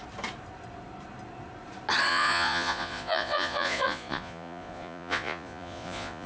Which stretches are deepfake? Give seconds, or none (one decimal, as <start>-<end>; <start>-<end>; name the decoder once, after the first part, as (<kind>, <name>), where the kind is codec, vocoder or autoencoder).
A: 2.1-6.3 (vocoder, Vocos)